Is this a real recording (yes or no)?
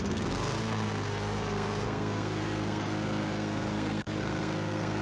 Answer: no